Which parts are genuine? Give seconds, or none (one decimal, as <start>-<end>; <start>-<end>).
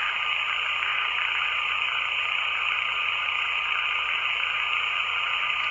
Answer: 0.0-0.9; 4.3-5.7